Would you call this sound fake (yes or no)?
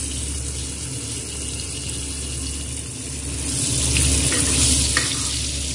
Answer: no